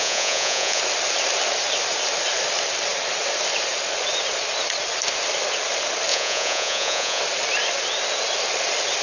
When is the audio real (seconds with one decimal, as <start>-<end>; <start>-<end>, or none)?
0.8-6.1; 7.2-9.0